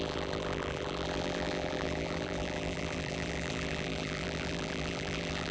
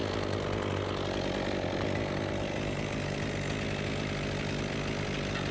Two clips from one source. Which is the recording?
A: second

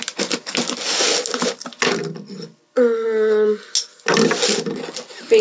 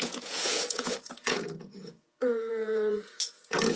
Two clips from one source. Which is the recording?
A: first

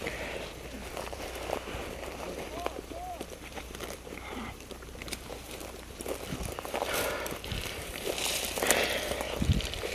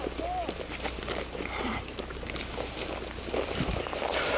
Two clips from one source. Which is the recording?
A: second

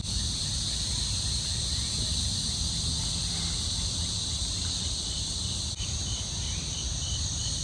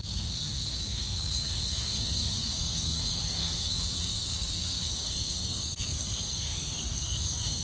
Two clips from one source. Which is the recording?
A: first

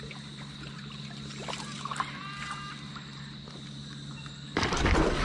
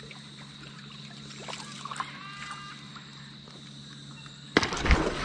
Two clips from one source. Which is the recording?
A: second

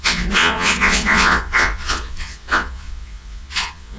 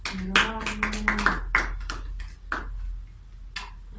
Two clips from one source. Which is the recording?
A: second